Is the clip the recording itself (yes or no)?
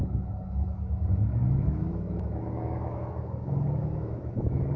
no